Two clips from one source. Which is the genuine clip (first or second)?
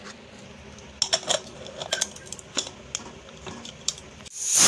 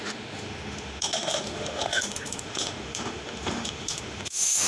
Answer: first